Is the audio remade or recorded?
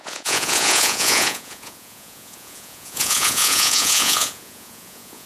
remade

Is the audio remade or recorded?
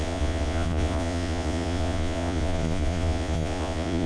remade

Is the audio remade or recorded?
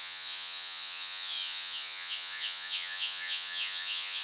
remade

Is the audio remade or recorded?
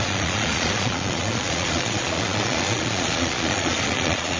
remade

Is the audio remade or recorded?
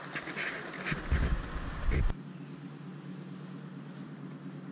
recorded